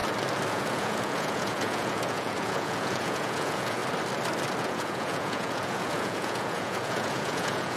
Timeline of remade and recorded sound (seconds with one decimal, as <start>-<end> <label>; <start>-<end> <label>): 0.0-0.5 recorded; 0.5-3.8 remade; 3.8-4.6 recorded; 4.6-7.8 remade

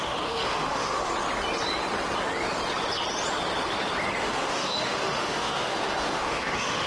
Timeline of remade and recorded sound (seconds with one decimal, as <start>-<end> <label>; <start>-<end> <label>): 0.0-1.1 remade; 1.1-4.2 recorded; 4.2-6.9 remade

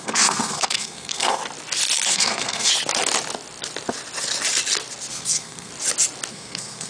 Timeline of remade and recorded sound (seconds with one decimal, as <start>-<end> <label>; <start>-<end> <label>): 0.0-1.4 remade; 1.4-2.1 recorded; 2.1-2.7 remade; 2.7-5.1 recorded; 5.1-5.7 remade; 5.7-6.3 recorded; 6.3-6.9 remade

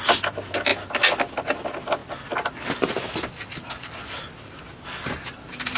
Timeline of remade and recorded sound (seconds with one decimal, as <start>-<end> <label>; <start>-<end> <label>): 0.0-5.8 recorded

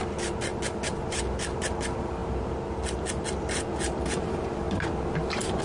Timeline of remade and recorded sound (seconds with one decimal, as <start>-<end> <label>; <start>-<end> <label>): 0.0-5.6 remade

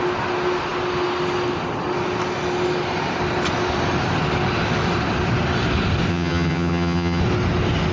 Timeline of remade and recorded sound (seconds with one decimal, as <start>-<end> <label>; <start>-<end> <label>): 0.0-6.1 recorded; 6.1-7.2 remade; 7.2-7.9 recorded

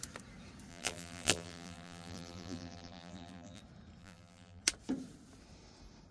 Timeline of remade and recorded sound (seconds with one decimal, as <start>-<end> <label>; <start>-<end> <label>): 0.0-0.7 recorded; 0.7-3.6 remade; 3.6-4.0 recorded; 4.0-4.6 remade; 4.6-6.1 recorded